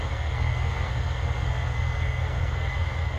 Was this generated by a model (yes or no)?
yes